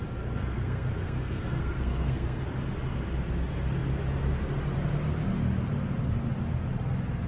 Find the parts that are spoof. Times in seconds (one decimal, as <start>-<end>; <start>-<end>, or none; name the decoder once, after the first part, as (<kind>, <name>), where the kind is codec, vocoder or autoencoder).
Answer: 0.4-2.4 (codec, SNAC)